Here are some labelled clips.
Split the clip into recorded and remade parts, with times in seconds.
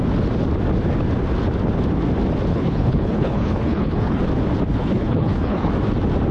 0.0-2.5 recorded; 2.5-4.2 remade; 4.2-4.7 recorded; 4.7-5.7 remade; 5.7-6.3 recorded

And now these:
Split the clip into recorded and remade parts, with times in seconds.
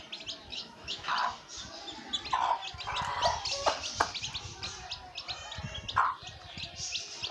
0.0-0.5 recorded; 0.5-1.1 remade; 1.1-7.3 recorded